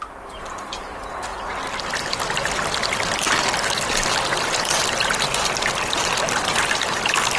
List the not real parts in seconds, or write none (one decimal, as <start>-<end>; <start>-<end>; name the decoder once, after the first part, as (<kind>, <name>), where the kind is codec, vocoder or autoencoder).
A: none